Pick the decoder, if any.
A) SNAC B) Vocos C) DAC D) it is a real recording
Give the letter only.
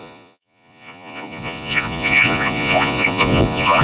B